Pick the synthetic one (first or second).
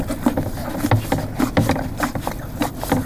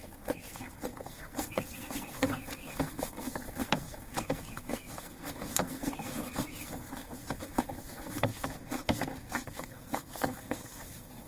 second